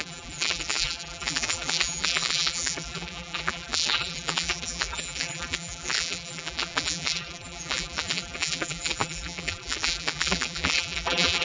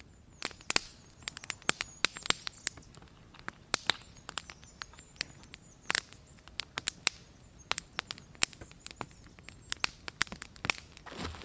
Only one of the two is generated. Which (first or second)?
first